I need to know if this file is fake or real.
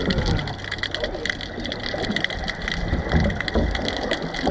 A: real